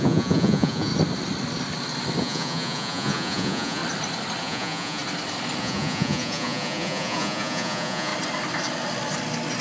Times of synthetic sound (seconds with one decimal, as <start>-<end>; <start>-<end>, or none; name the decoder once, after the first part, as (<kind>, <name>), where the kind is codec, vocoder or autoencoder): 0.0-0.9 (vocoder, Vocos); 2.2-3.8; 4.4-5.0; 5.6-8.1